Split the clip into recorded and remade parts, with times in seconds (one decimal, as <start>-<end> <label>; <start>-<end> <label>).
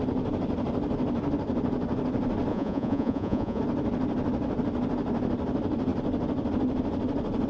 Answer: 0.0-2.5 recorded; 2.5-3.6 remade; 3.6-7.5 recorded